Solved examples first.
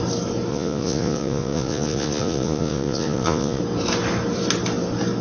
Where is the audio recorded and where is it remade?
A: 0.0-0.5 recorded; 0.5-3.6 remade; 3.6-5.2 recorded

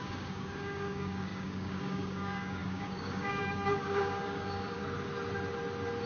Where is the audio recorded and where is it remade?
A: 0.0-4.8 remade; 4.8-6.1 recorded

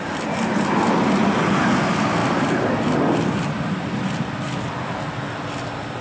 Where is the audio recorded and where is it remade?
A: 0.0-6.0 recorded

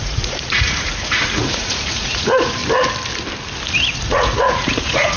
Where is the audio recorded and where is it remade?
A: 0.0-2.6 remade; 2.6-3.9 recorded; 3.9-5.2 remade

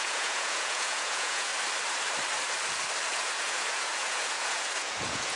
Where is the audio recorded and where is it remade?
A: 0.0-1.5 remade; 1.5-3.1 recorded; 3.1-5.4 remade

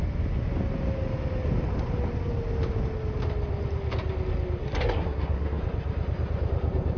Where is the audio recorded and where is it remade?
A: 0.0-4.6 recorded; 4.6-5.6 remade; 5.6-7.0 recorded

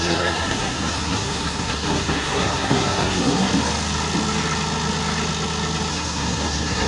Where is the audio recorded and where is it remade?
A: 0.0-3.5 remade; 3.5-5.9 recorded; 5.9-6.9 remade

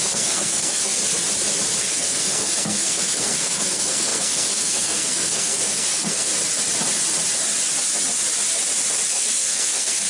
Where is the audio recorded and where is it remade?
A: 0.0-1.0 remade; 1.0-1.8 recorded; 1.8-6.3 remade; 6.3-9.1 recorded; 9.1-10.1 remade